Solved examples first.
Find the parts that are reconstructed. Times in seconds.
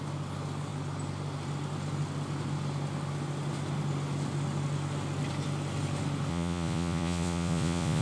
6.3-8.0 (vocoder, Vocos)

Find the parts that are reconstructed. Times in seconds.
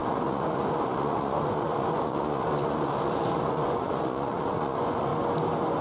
0.0-5.1 (vocoder, Vocos)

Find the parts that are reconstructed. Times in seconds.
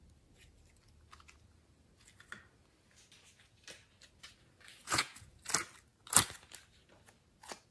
4.8-5.4 (vocoder, Vocos)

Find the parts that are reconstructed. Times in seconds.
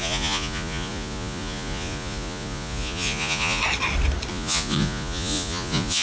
0.0-3.6 (vocoder, Vocos); 4.3-6.0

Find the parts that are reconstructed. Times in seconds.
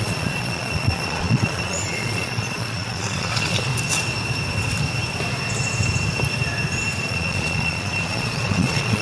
0.0-3.7 (vocoder, Vocos); 7.0-9.0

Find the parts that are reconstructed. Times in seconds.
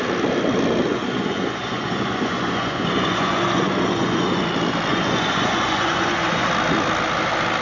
0.9-4.4 (vocoder, Vocos); 4.9-6.5